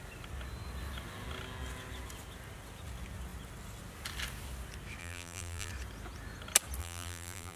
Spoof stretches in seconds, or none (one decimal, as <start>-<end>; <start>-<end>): 5.0-5.7; 6.8-7.6